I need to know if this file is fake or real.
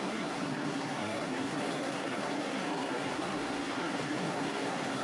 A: fake